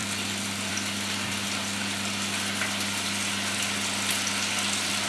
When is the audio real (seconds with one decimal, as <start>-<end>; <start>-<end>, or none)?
0.0-5.1